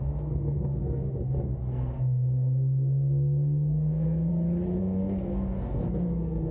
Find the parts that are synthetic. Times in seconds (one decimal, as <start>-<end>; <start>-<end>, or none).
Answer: 0.0-4.3; 4.8-6.5

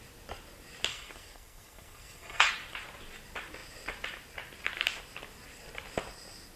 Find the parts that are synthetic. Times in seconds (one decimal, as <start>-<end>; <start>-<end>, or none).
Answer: 0.9-2.5

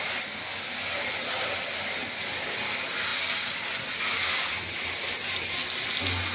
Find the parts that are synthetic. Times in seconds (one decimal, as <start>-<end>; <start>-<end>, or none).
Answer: none

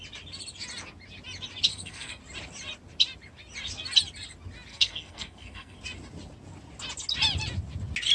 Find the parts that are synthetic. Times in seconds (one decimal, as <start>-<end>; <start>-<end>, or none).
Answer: 1.7-2.2; 4.7-5.8

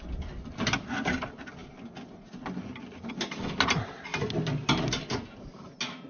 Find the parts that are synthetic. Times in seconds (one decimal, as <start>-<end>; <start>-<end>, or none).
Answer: none

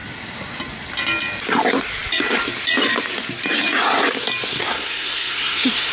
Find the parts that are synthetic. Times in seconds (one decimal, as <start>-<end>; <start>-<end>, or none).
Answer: 4.5-5.9

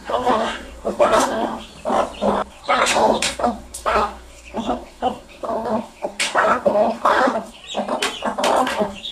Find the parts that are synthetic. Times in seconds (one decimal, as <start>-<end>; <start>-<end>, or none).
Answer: 0.0-1.7; 2.5-7.6; 8.6-9.1

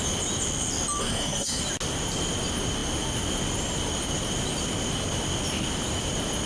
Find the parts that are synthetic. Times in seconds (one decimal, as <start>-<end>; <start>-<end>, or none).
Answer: 1.0-1.6